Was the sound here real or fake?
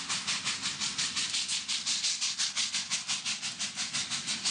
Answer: real